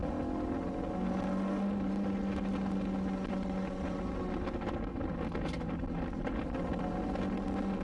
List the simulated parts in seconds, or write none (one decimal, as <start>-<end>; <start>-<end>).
none